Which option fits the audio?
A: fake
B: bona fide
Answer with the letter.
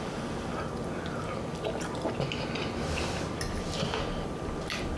B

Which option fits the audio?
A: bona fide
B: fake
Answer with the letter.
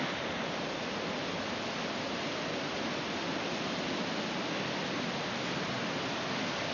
A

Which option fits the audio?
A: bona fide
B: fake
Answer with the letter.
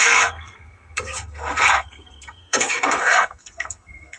B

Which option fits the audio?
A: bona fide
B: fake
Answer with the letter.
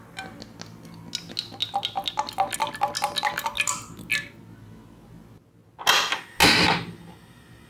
A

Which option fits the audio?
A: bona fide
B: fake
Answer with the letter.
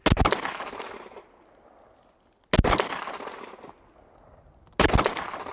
A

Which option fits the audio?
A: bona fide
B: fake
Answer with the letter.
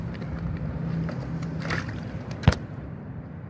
B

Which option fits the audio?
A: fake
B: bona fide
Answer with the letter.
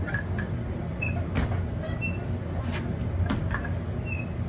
B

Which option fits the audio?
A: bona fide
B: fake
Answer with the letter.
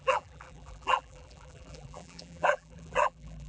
B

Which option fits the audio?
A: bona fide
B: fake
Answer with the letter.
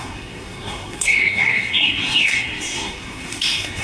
B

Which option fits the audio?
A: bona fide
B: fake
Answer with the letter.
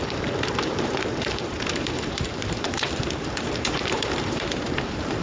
B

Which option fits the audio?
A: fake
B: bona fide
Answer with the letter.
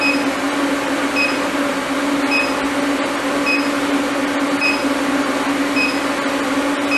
B